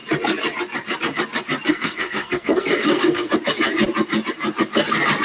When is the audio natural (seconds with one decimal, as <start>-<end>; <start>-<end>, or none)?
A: 0.0-1.7; 3.3-5.2